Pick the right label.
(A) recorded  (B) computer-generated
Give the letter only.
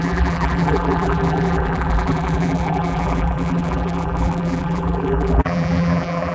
B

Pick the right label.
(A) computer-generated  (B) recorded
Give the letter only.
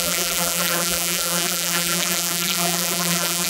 A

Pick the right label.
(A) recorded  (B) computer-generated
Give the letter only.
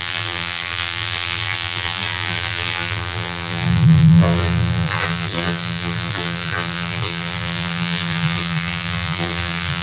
B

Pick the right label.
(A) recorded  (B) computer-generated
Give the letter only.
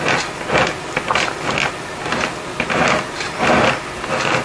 A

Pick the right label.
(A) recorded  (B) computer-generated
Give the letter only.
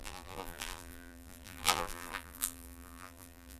B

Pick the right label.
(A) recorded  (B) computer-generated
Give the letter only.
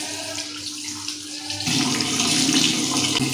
A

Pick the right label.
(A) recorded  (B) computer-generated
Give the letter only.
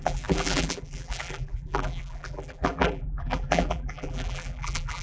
B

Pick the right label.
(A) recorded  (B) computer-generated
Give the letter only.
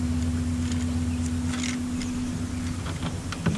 A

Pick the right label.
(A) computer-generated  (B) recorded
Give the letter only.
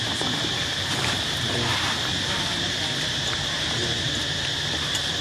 A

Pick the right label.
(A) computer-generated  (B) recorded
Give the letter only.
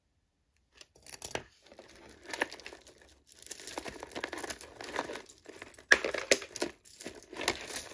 B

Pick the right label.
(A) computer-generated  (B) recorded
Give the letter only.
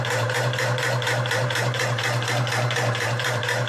A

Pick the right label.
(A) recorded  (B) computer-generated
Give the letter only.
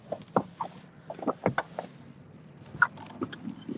A